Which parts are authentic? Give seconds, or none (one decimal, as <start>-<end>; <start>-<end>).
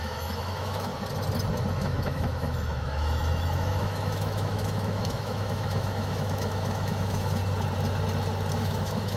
0.9-1.7; 7.4-8.6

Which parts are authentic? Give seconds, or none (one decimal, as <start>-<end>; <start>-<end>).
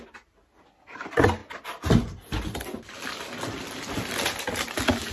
0.0-5.1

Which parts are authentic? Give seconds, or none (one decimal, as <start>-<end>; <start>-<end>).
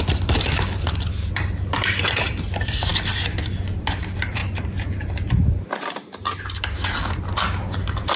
2.9-3.8; 4.4-6.6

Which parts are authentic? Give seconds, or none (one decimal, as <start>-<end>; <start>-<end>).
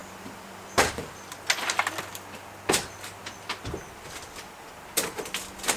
0.9-5.8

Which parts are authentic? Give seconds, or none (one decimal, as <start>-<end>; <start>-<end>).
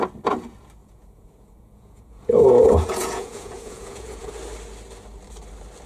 0.0-0.8; 4.3-5.9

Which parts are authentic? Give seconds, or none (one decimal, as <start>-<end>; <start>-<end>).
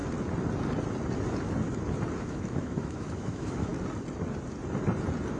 0.0-2.2; 3.7-5.4